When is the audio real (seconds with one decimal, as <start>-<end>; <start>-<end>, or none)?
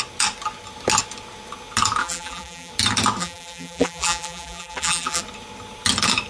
0.0-2.0; 2.7-3.2; 5.2-6.3